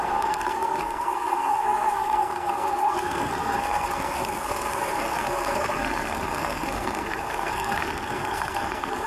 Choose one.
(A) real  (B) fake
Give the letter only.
B